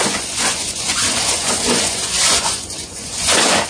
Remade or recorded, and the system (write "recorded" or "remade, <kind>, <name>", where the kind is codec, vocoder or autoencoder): remade, vocoder, Vocos